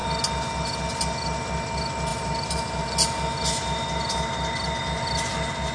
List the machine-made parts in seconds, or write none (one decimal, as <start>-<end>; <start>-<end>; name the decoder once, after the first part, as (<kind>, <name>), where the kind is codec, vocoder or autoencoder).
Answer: 2.1-2.9 (vocoder, BigVGAN v2)